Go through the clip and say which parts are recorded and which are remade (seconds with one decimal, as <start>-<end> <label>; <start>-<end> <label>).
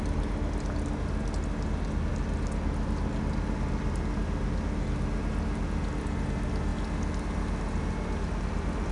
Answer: 0.0-8.9 recorded